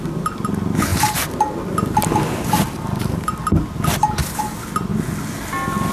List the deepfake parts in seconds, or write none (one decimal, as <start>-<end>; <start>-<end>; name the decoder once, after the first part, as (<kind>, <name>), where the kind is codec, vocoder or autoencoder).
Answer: none